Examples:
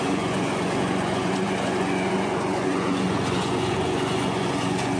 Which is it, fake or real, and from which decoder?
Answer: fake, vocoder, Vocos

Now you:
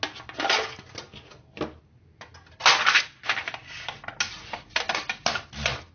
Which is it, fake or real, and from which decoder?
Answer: real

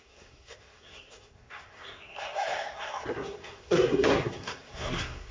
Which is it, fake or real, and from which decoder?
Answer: fake, codec, SNAC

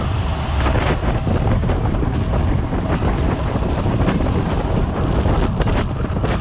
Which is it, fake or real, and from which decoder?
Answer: real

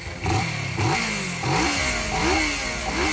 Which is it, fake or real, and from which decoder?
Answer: real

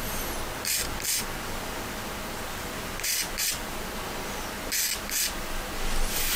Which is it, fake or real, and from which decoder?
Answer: real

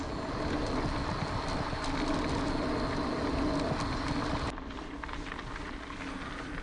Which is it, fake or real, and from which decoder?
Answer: real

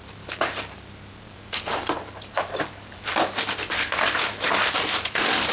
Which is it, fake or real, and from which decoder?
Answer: fake, vocoder, BigVGAN v2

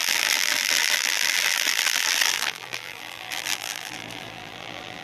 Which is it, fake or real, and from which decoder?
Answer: fake, vocoder, BigVGAN v2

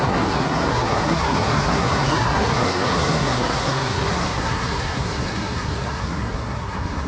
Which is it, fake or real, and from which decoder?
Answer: fake, codec, SNAC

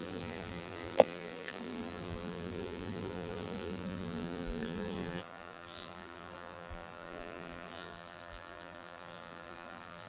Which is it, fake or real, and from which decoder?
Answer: fake, vocoder, BigVGAN v2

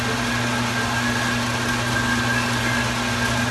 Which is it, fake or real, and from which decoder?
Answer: real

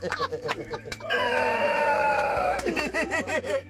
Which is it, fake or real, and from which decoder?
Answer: fake, autoencoder, DAC-VAE